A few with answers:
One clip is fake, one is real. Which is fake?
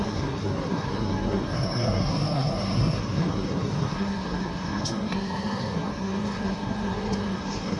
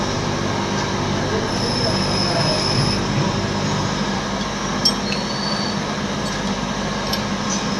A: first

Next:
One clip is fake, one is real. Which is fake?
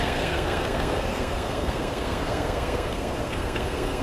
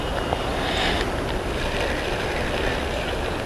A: first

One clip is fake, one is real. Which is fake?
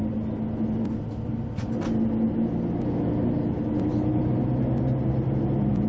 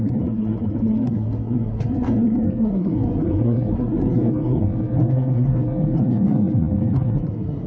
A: second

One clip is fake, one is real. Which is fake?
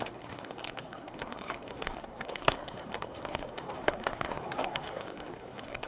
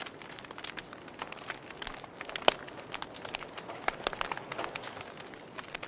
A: first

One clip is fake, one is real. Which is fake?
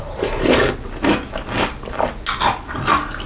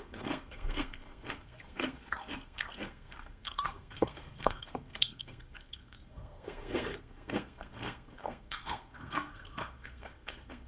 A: second